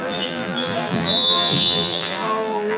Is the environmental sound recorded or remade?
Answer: remade